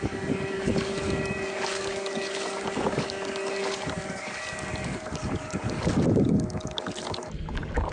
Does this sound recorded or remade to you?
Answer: remade